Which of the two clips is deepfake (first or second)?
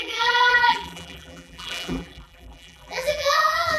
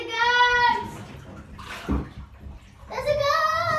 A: first